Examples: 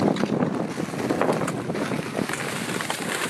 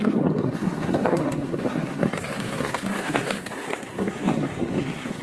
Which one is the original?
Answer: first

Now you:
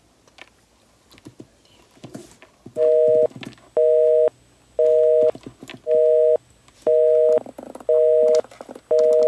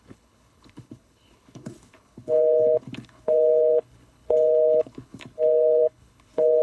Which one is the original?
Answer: first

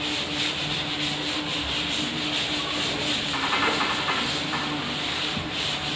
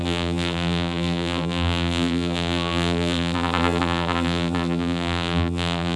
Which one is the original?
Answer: first